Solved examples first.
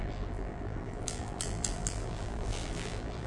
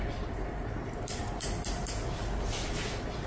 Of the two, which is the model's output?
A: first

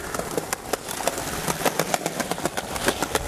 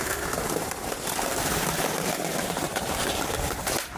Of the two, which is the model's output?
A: second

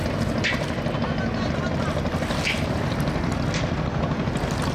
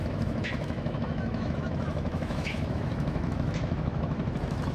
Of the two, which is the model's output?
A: second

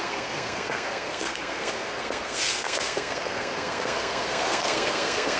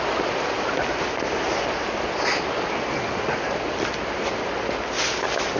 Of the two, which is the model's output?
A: first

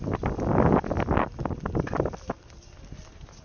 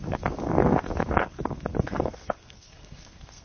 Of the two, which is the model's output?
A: second